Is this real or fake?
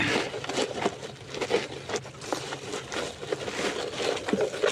real